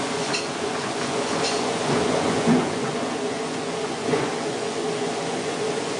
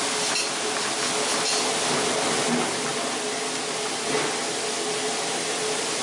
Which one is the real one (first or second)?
second